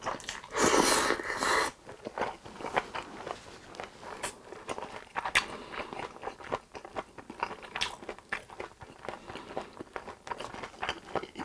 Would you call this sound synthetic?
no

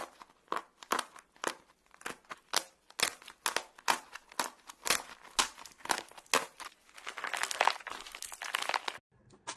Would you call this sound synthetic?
no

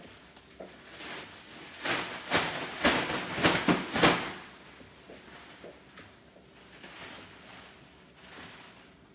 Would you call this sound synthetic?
no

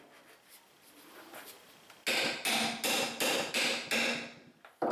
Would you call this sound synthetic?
no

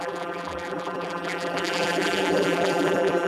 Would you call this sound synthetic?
yes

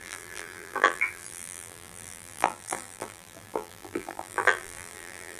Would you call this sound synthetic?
yes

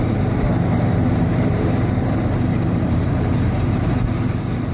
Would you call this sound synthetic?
yes